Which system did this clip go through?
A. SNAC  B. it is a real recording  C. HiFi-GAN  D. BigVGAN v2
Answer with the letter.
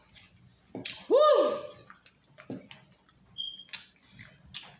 B